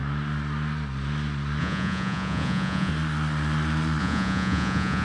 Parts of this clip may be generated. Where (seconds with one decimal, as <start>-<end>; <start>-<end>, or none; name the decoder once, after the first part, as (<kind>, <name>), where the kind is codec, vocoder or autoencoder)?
1.6-2.9 (vocoder, Vocos); 4.0-5.0